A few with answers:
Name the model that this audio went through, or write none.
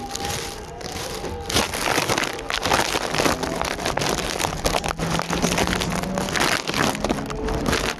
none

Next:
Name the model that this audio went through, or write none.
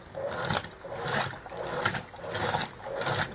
none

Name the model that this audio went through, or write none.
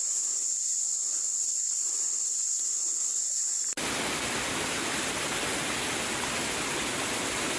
none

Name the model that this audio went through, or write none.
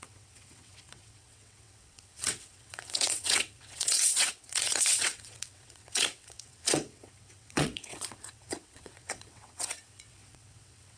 vocoder, WaveNeXt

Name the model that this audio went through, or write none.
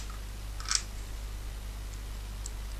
none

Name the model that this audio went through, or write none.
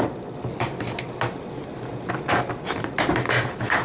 none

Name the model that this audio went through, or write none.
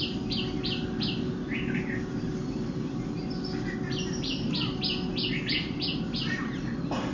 none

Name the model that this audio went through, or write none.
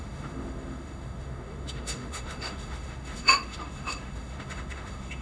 autoencoder, DAC-VAE